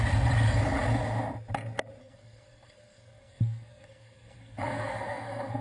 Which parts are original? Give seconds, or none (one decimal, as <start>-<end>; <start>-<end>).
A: 0.0-2.0